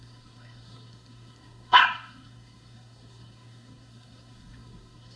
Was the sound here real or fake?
fake